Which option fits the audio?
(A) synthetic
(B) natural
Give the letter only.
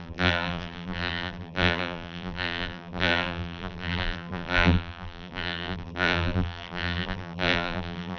A